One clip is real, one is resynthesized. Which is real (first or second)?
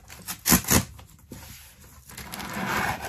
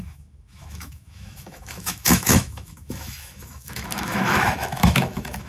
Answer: first